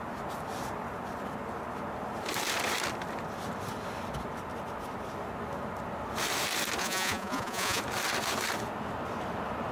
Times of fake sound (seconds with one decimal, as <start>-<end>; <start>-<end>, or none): 6.8-7.8